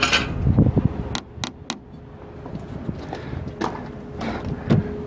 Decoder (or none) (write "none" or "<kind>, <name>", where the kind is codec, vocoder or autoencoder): none